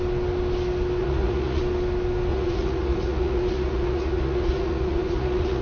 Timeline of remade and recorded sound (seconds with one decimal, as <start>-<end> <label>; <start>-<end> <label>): 0.0-1.0 recorded; 1.0-1.6 remade; 1.6-2.3 recorded; 2.3-5.6 remade